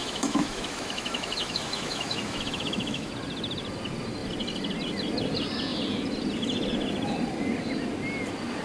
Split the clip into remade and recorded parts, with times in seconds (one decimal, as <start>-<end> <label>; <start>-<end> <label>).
0.0-3.1 remade; 3.1-8.6 recorded

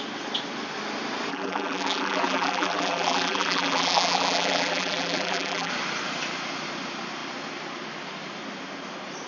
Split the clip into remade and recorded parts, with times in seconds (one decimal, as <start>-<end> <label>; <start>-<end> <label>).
0.0-1.3 recorded; 1.3-5.7 remade; 5.7-9.3 recorded

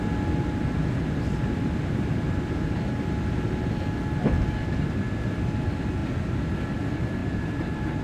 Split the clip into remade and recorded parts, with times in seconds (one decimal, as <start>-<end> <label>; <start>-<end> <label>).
0.0-7.2 recorded; 7.2-8.0 remade

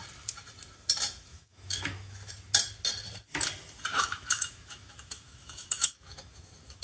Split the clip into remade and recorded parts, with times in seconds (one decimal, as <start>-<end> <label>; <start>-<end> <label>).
0.0-1.3 recorded; 1.3-2.3 remade; 2.3-3.9 recorded; 3.9-6.8 remade

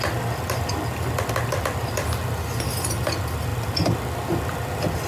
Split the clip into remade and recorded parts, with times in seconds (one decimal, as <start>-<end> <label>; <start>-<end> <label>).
0.0-5.1 recorded

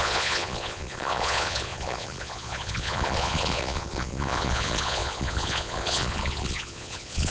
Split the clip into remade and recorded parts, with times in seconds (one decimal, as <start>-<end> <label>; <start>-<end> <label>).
0.0-7.3 remade

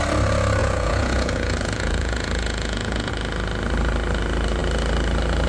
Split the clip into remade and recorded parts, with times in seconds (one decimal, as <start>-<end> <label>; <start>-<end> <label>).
0.0-0.6 recorded; 0.6-3.1 remade; 3.1-5.5 recorded